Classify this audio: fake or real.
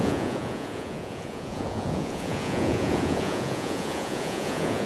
fake